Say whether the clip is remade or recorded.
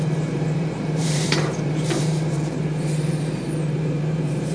remade